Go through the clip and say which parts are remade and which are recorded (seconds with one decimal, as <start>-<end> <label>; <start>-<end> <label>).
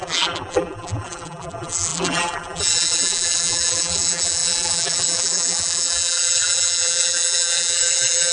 0.0-8.3 remade